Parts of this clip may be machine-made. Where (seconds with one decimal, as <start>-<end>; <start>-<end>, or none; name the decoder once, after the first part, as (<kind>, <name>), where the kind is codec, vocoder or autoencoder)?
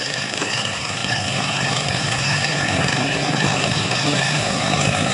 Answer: 0.0-5.1 (codec, SNAC)